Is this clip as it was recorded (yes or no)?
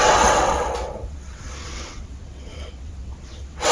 no